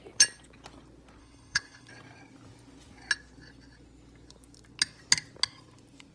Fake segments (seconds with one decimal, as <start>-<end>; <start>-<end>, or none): 1.2-1.9